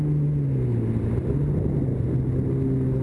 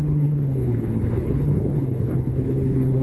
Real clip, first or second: first